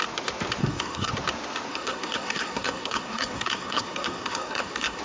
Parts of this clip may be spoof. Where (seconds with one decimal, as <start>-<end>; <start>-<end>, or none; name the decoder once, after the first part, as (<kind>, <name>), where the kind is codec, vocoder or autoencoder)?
0.6-1.1 (codec, SNAC); 1.7-5.0